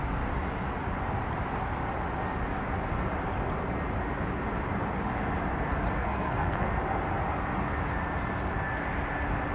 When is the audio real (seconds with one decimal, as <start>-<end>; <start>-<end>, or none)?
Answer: 0.0-6.0; 6.7-9.5